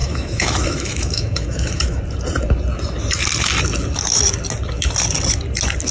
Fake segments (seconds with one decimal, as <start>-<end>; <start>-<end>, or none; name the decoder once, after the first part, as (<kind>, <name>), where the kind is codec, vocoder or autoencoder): 0.0-2.0 (autoencoder, DAC-VAE)